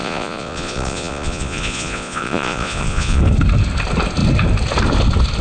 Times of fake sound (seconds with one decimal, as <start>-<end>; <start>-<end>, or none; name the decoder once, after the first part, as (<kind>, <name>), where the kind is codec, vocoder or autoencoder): 0.0-3.2 (vocoder, Vocos)